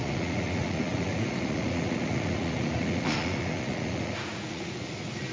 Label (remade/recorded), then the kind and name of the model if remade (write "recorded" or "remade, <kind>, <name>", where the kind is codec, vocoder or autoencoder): remade, vocoder, Vocos